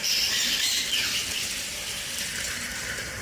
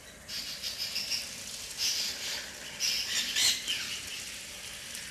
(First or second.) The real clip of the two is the second